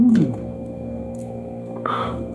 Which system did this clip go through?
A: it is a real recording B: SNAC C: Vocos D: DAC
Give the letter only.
B